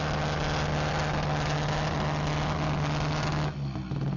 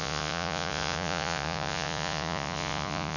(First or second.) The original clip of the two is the first